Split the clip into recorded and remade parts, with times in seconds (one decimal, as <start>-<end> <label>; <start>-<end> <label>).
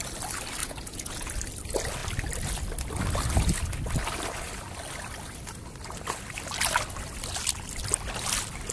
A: 0.0-0.6 recorded; 0.6-1.3 remade; 1.3-8.7 recorded